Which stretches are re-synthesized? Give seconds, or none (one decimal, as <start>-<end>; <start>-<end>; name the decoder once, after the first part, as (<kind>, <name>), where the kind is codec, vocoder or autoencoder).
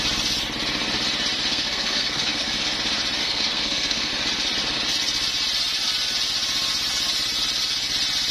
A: 1.5-2.6 (codec, SNAC); 3.2-4.1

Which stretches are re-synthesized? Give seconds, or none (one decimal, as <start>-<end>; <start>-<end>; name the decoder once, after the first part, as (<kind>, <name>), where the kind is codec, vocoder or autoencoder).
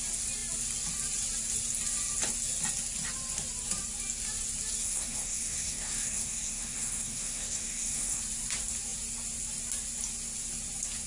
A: 4.8-8.2 (codec, SNAC)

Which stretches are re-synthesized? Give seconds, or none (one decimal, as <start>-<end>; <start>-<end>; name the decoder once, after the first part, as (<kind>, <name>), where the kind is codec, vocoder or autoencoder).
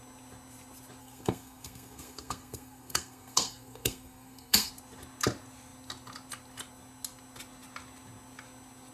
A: 1.0-4.7 (codec, SNAC)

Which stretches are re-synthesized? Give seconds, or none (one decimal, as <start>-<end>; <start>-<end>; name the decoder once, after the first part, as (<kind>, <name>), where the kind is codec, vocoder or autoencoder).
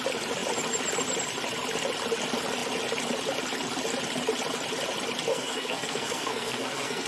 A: 5.3-7.1 (codec, SNAC)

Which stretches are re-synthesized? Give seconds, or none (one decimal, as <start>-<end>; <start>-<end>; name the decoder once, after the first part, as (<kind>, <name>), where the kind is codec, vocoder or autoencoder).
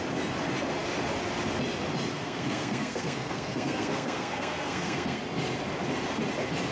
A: 2.1-5.2 (codec, SNAC)